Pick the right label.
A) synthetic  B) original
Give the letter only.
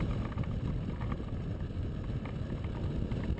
B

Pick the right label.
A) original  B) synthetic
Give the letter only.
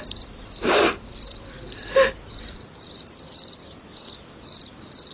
A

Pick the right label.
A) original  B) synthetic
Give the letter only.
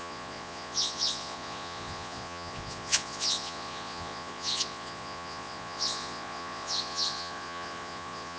B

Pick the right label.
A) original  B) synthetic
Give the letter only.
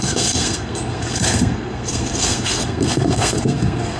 B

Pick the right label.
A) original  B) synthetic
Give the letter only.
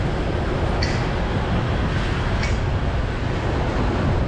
A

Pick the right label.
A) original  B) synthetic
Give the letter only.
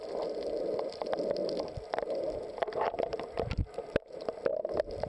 A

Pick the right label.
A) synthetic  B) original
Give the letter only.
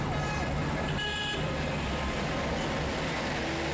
B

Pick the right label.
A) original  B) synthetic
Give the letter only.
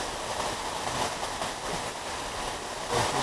A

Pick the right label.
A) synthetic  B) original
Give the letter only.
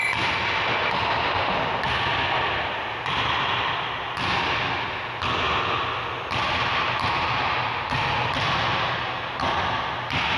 B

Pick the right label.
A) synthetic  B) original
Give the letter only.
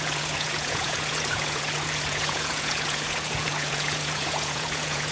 A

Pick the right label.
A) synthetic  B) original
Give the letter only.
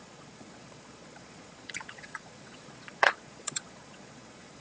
A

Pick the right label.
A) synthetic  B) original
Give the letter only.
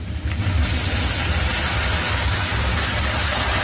B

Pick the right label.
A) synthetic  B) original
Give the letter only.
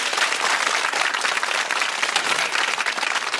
B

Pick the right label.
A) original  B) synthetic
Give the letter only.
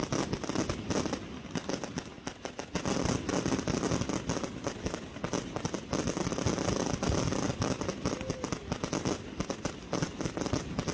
A